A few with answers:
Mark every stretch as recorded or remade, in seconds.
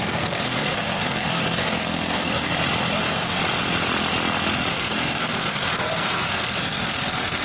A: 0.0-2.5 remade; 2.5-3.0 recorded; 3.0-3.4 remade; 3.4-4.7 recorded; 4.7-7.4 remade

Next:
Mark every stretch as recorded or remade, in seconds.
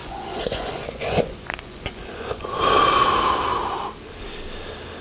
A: 0.0-2.6 remade; 2.6-5.0 recorded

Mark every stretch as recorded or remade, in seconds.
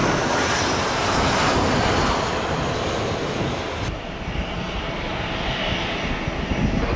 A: 0.0-4.2 remade; 4.2-7.0 recorded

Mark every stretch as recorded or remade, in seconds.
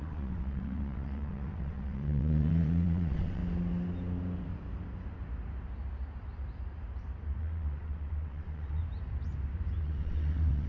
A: 0.0-3.4 remade; 3.4-7.4 recorded; 7.4-8.8 remade; 8.8-9.8 recorded; 9.8-10.7 remade